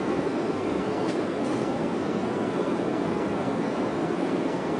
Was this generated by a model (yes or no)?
yes